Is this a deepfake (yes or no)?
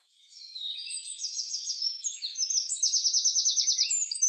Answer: yes